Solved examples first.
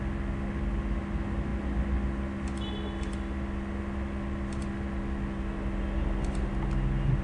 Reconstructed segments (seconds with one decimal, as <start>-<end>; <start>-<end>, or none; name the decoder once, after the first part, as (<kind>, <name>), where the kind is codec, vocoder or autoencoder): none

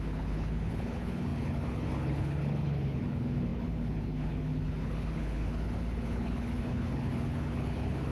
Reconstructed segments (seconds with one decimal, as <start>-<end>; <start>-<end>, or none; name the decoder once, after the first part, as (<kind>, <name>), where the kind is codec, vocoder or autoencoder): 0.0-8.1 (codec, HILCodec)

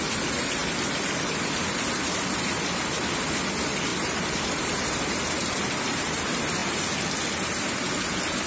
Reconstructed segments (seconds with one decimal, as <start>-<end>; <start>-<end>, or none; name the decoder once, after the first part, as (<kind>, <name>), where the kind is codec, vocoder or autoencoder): none

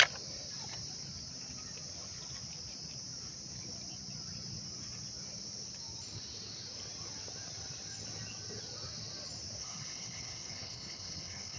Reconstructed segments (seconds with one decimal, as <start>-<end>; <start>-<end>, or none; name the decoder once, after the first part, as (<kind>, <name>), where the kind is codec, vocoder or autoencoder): 9.6-11.6 (codec, HILCodec)